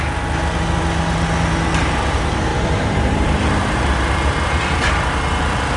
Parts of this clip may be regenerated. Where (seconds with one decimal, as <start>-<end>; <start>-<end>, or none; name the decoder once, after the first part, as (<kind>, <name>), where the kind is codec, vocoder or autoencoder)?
2.5-4.9 (vocoder, BigVGAN v2)